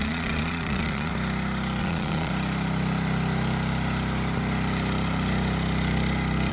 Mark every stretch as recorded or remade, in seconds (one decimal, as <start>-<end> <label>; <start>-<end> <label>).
0.0-1.1 remade; 1.1-1.8 recorded; 1.8-2.3 remade; 2.3-6.5 recorded